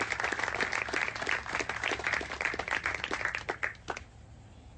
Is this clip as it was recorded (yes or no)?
yes